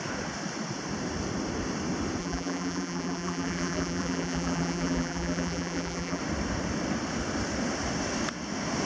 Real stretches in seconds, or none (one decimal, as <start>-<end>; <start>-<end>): 0.0-2.2; 6.2-8.9